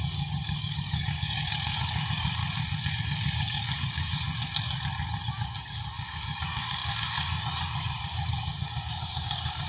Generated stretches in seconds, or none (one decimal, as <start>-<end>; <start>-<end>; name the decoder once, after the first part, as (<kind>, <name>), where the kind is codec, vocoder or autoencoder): 0.0-2.4 (codec, DAC); 3.0-4.1; 5.3-9.7

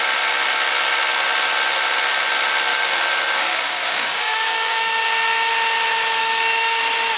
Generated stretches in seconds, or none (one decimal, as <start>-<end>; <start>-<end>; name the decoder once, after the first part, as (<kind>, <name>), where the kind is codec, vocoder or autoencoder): 2.7-5.5 (codec, DAC); 6.2-6.8

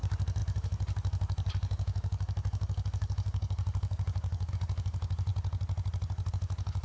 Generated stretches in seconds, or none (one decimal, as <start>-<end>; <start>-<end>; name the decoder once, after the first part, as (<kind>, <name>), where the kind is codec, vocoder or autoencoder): 0.0-5.3 (codec, DAC); 6.3-6.8

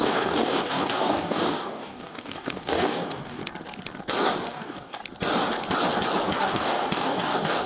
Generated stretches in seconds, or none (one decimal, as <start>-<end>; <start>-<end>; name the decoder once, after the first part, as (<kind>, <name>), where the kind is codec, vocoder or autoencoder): 0.0-3.4 (codec, DAC); 4.5-5.0; 6.4-7.7

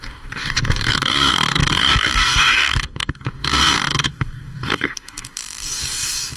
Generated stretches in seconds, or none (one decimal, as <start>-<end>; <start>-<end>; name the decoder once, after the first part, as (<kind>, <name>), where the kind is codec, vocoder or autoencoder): 0.0-6.4 (codec, DAC)